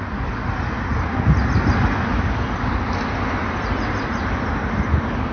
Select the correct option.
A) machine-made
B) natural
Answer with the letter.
B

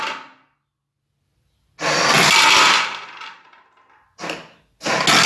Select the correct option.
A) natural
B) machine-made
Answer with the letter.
A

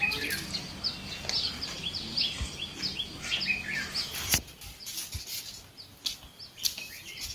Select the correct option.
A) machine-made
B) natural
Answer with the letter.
B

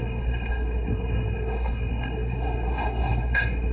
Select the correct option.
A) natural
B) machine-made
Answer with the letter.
B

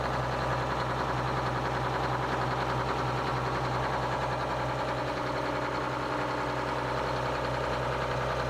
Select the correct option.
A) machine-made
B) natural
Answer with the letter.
B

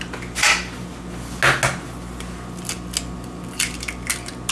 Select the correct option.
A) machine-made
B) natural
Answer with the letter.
B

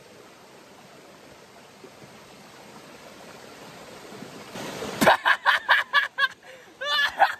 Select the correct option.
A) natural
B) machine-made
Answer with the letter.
A